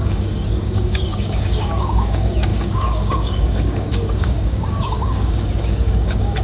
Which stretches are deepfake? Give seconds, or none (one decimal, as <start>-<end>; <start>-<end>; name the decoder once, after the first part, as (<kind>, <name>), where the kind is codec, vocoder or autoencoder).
0.0-6.4 (codec, DAC)